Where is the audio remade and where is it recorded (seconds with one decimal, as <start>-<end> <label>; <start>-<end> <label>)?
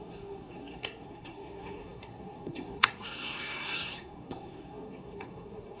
0.0-5.8 remade